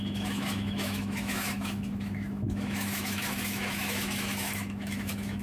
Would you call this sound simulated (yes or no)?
yes